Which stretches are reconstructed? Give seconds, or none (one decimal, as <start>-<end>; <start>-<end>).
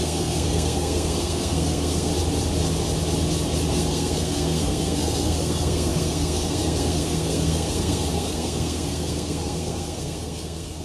0.0-2.1; 3.7-10.8